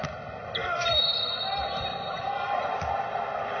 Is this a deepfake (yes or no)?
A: no